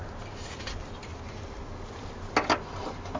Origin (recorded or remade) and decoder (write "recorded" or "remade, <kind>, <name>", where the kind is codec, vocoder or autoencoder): recorded